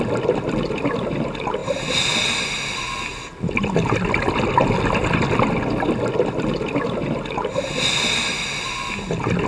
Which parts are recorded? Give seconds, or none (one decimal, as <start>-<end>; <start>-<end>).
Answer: 0.0-9.5